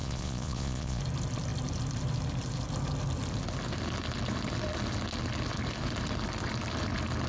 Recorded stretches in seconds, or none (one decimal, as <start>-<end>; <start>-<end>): 1.0-7.3